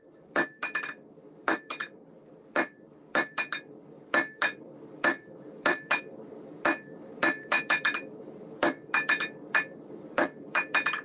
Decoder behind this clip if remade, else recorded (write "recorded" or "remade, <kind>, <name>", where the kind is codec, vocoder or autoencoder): remade, vocoder, BigVGAN v2